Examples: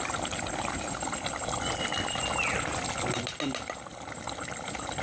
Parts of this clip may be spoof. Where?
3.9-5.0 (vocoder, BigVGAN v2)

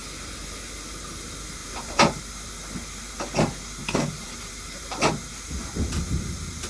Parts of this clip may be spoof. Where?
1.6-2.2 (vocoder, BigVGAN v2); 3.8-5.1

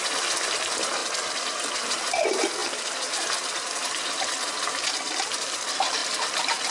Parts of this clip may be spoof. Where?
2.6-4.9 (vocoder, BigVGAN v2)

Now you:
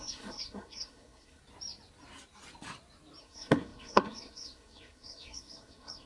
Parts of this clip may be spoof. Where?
0.0-1.4 (codec, SNAC); 3.2-6.1

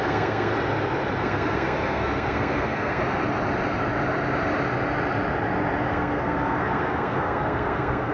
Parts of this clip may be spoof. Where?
0.0-0.5 (codec, SNAC); 1.2-3.0; 5.9-8.1

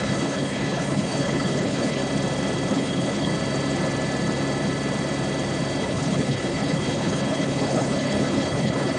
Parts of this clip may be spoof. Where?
0.0-2.0 (codec, HILCodec); 2.7-3.3; 5.8-9.0

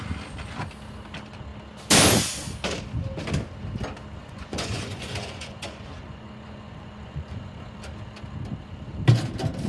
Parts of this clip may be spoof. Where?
4.2-7.8 (vocoder, Vocos)